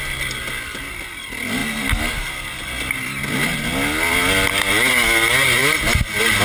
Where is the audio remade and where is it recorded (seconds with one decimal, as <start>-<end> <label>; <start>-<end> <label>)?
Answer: 0.0-6.4 recorded